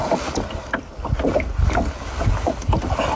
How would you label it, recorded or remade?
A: recorded